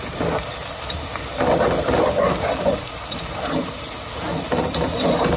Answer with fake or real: fake